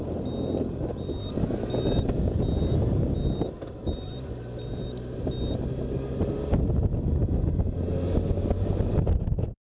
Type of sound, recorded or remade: recorded